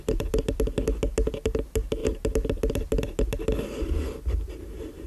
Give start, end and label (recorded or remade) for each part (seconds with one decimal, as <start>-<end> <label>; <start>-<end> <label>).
0.0-5.1 recorded